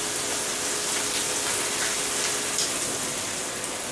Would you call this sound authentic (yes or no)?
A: yes